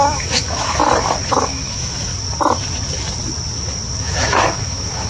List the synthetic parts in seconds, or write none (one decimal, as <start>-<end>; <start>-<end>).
0.0-0.8; 1.3-2.1; 4.0-5.1